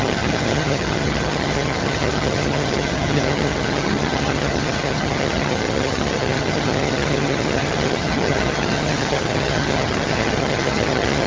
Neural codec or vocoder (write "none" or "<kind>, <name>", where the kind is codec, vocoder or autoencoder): vocoder, HiFi-GAN